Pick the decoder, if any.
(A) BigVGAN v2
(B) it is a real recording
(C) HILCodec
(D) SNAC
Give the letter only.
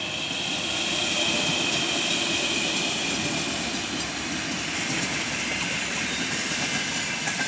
B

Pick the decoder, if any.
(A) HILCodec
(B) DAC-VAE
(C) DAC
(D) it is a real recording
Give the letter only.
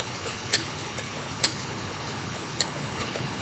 A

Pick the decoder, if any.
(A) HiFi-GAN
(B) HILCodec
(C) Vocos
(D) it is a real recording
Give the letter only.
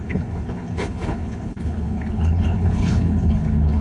B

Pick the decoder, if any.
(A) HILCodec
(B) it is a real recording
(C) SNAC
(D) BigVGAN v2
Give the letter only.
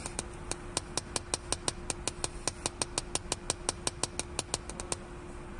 B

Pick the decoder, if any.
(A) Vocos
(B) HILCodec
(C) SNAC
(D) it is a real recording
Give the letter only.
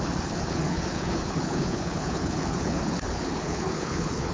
B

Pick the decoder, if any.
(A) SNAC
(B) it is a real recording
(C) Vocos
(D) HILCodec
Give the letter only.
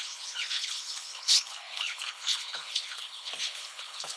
D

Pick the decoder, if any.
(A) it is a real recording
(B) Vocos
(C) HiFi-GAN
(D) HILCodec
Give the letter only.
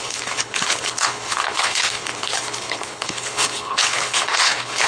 D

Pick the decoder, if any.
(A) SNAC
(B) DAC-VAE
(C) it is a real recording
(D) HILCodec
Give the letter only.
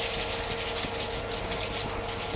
C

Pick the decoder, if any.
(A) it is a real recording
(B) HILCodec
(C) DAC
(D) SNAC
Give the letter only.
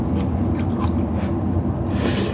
A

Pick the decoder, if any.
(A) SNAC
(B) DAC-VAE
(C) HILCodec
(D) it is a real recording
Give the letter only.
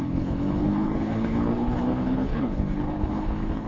C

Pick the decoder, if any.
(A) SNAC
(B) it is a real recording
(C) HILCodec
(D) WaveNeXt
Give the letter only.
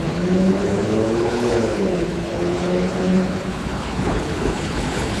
C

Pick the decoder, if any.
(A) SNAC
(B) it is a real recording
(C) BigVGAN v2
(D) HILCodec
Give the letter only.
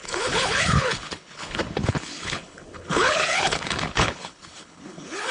D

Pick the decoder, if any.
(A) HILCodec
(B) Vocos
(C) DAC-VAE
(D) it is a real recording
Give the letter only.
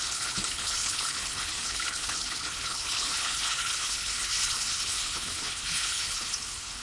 A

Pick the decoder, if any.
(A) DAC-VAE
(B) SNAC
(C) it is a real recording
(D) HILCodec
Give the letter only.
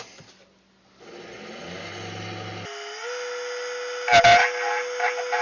C